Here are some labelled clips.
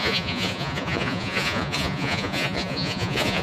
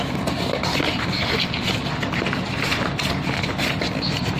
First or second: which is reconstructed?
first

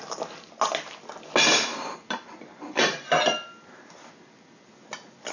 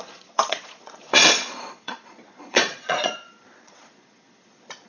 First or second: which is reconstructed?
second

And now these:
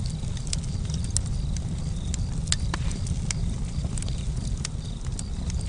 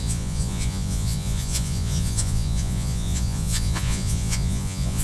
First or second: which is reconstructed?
second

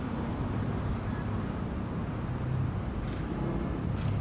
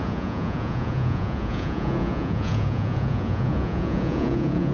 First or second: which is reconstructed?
second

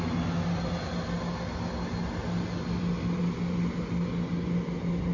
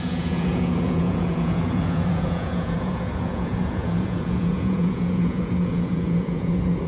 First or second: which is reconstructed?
second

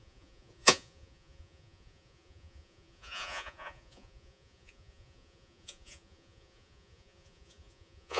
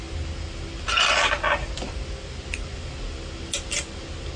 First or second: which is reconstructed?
first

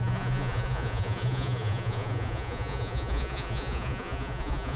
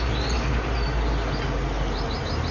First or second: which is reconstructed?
first